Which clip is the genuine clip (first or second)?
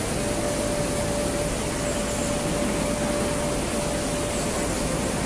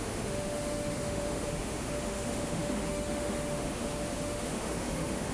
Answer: first